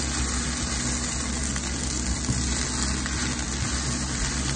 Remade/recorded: recorded